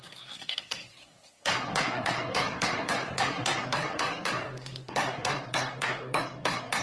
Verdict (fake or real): fake